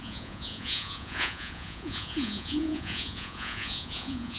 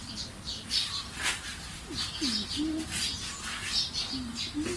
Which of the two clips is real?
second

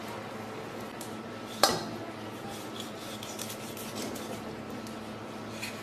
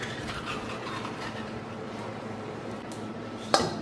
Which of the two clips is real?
first